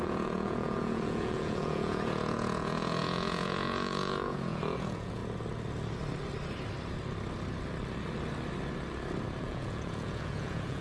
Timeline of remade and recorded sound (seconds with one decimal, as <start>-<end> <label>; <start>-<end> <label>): 0.0-5.2 remade; 5.2-9.4 recorded; 9.4-10.8 remade